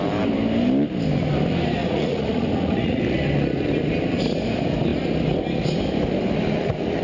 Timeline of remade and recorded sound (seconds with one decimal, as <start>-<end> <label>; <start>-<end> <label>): 0.0-1.8 recorded; 1.8-3.0 remade; 3.0-7.0 recorded